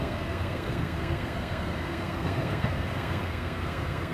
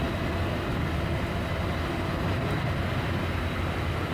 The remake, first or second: first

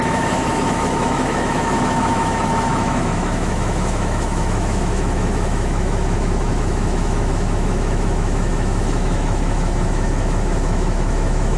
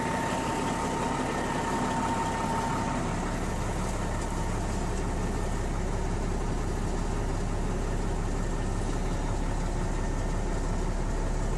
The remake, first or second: first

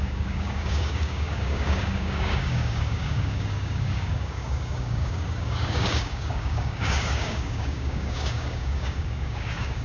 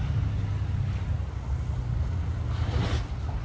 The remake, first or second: first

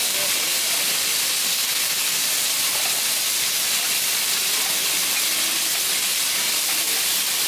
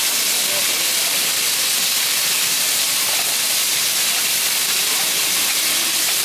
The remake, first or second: second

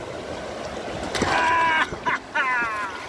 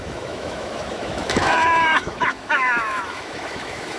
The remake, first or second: second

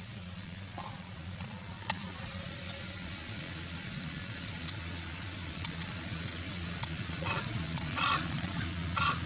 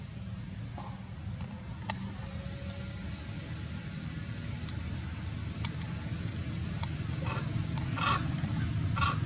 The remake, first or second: first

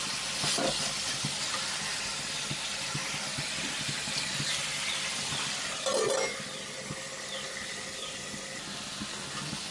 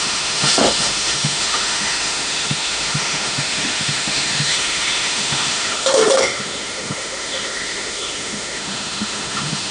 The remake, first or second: second